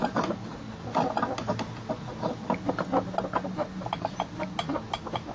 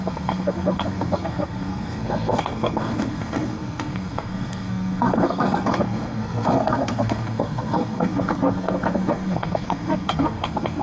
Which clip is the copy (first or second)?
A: second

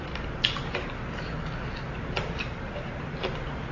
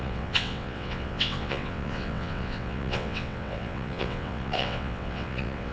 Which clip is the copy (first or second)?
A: second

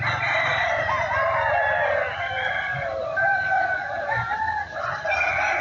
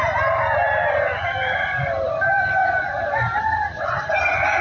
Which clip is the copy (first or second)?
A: first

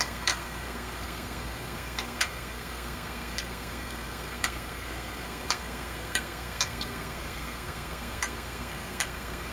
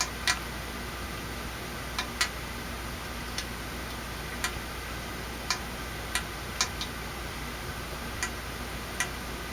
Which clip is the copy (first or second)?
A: first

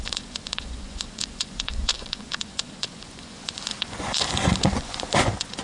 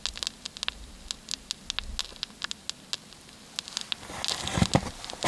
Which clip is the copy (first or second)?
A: first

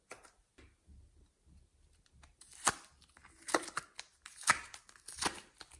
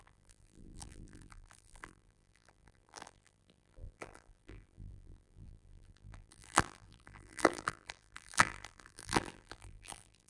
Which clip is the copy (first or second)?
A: second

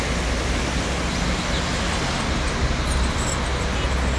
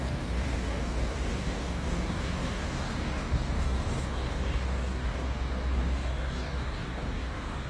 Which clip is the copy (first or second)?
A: second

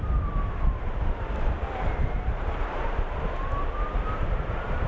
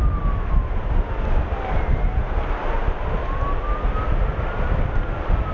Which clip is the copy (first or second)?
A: first